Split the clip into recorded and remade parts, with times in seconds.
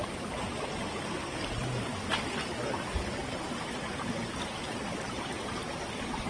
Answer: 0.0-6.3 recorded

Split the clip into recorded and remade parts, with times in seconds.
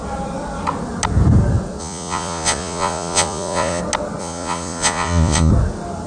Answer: 0.0-1.8 recorded; 1.8-3.8 remade; 3.8-4.2 recorded; 4.2-5.5 remade; 5.5-6.1 recorded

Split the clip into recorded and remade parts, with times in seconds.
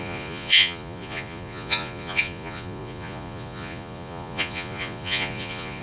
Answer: 0.0-5.8 remade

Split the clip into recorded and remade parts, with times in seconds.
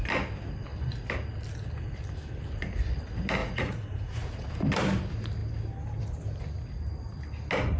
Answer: 0.0-3.4 recorded; 3.4-4.5 remade; 4.5-7.8 recorded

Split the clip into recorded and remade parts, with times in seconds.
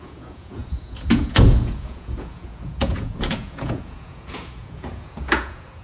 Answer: 0.0-5.8 remade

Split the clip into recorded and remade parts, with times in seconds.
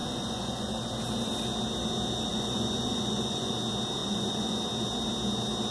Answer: 0.0-0.7 remade; 0.7-2.3 recorded; 2.3-3.5 remade; 3.5-4.0 recorded; 4.0-4.6 remade; 4.6-5.7 recorded